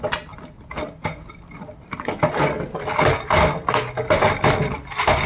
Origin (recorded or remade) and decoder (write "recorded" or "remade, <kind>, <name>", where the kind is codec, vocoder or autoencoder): recorded